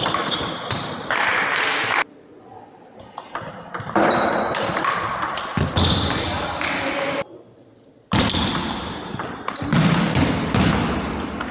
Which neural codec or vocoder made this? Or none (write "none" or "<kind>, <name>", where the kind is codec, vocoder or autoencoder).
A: none